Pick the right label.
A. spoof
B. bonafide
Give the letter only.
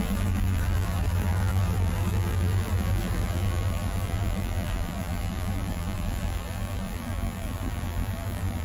A